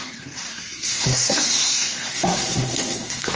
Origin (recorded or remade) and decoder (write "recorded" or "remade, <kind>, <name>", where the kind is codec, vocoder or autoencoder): remade, codec, SNAC